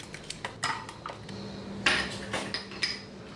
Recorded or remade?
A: recorded